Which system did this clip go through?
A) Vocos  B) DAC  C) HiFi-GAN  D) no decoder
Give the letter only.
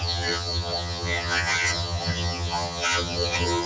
C